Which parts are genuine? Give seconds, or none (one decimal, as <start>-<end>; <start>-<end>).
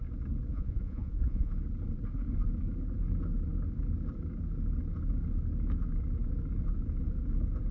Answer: 0.0-0.5; 1.5-7.7